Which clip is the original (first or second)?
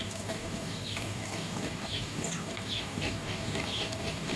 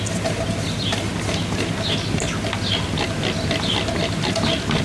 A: second